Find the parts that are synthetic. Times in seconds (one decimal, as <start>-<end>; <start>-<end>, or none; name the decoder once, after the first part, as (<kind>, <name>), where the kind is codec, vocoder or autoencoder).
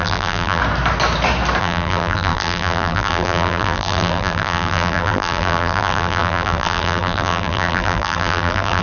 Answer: 0.0-0.6 (vocoder, BigVGAN v2); 1.6-8.8